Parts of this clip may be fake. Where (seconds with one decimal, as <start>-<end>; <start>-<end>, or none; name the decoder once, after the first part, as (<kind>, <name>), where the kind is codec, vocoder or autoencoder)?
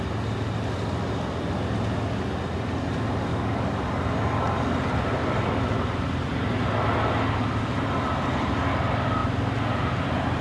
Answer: 3.3-3.8 (codec, DAC)